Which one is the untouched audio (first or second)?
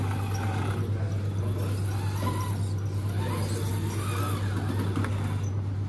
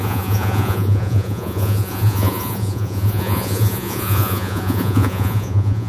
first